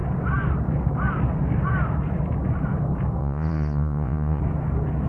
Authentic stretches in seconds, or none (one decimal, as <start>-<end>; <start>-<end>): 0.0-3.2; 4.4-5.1